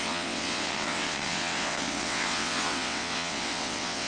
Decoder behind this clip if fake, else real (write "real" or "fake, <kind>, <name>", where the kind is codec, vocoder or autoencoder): fake, vocoder, WaveNeXt